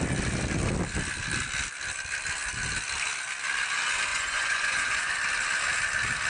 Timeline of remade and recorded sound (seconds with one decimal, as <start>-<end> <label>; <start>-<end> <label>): 0.0-4.1 recorded; 4.1-5.1 remade; 5.1-6.3 recorded